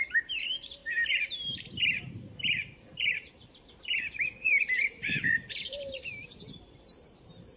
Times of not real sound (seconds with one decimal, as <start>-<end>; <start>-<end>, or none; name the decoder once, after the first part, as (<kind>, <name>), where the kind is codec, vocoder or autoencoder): 0.0-7.6 (vocoder, BigVGAN v2)